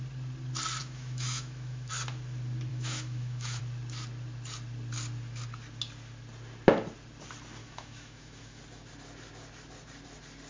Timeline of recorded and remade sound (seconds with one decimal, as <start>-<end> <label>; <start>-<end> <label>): 0.0-0.8 recorded; 0.8-1.9 remade; 1.9-2.7 recorded; 2.7-3.6 remade; 3.6-7.6 recorded; 7.6-8.6 remade; 8.6-10.5 recorded